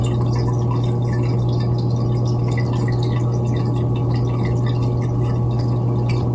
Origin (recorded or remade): recorded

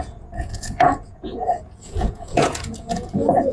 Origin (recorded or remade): remade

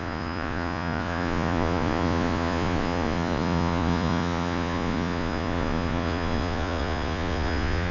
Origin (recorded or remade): remade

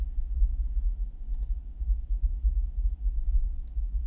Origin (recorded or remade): recorded